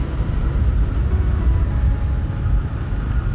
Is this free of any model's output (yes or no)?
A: yes